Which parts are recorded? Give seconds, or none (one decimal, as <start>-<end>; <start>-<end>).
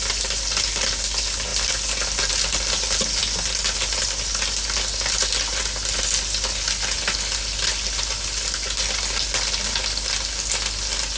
0.0-11.2